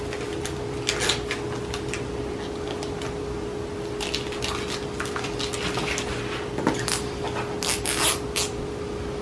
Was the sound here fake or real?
real